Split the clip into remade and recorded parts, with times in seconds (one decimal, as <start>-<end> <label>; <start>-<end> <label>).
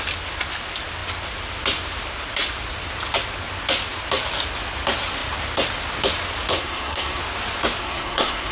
0.0-6.5 recorded; 6.5-7.2 remade; 7.2-7.8 recorded; 7.8-8.5 remade